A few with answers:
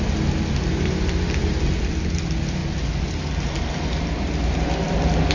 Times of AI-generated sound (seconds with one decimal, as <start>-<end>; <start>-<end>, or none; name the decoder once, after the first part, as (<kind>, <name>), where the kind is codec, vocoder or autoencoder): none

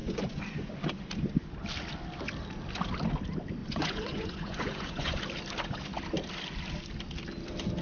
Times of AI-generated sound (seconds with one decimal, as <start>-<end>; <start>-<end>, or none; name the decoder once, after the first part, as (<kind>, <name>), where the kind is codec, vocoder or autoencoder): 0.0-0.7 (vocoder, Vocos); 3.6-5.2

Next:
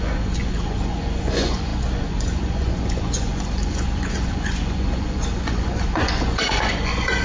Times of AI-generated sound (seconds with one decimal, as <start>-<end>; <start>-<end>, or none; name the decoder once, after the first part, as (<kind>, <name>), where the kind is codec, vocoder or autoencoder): 0.0-7.2 (vocoder, Vocos)

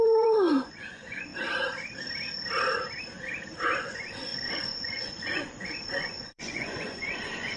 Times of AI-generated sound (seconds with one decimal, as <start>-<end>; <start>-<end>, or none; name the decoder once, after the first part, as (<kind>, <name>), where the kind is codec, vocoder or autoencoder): 0.0-1.3 (vocoder, Vocos); 3.8-7.6

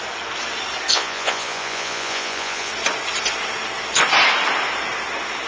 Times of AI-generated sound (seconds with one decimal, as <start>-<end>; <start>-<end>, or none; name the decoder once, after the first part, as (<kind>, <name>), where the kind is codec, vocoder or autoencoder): 0.9-2.7 (vocoder, Vocos)

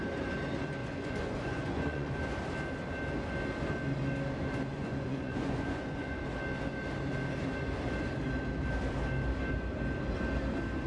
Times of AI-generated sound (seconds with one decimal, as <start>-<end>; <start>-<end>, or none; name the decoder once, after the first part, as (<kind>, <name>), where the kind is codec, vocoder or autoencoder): 0.8-2.1 (vocoder, Vocos); 4.7-6.2

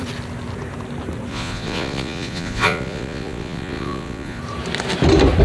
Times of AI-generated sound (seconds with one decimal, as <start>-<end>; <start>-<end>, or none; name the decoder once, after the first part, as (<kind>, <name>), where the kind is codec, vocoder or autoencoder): 1.3-4.4 (vocoder, Vocos)

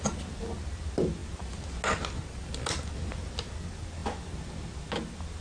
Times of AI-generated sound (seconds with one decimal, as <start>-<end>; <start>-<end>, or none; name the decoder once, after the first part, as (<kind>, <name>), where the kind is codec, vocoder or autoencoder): none